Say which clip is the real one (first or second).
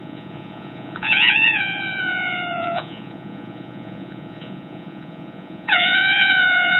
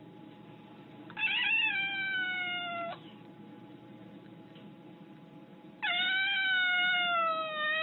second